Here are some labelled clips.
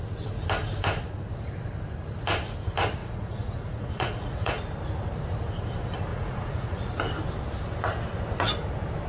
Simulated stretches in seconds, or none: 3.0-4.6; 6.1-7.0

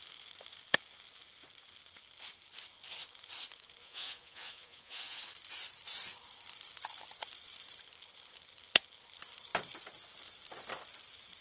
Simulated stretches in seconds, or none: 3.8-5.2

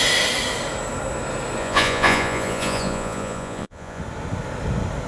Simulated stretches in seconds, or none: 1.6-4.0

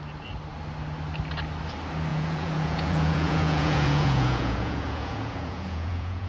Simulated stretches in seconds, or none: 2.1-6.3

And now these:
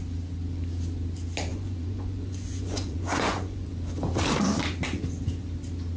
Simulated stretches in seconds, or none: 1.5-3.7

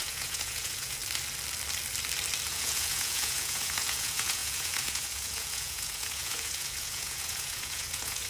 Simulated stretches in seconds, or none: 0.0-1.0; 2.5-8.3